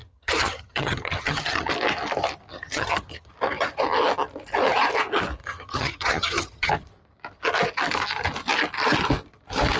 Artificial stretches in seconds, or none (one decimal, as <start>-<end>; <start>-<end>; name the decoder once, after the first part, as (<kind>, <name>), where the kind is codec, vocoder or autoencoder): 0.0-1.7 (vocoder, HiFi-GAN); 2.5-3.3; 5.4-6.7